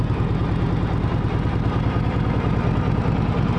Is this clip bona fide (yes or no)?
yes